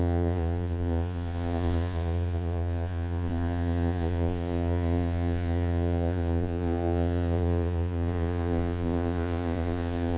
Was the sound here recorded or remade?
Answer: remade